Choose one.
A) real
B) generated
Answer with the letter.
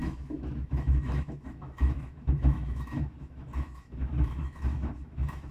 B